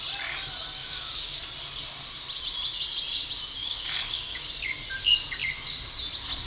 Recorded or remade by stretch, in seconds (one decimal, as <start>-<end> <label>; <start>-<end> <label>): 0.0-0.8 recorded; 0.8-1.4 remade; 1.4-3.6 recorded; 3.6-4.4 remade; 4.4-6.5 recorded